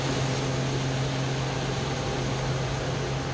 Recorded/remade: recorded